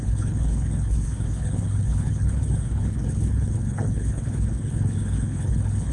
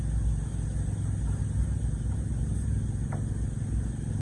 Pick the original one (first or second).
second